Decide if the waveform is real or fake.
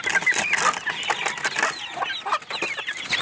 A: real